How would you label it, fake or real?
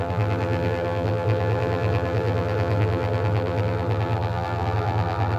fake